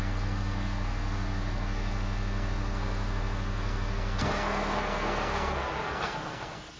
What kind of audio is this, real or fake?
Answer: fake